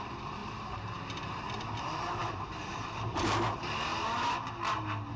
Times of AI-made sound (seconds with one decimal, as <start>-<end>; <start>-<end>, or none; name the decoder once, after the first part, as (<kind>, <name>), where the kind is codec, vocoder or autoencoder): 0.4-3.5 (vocoder, BigVGAN v2)